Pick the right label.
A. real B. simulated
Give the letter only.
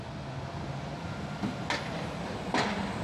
A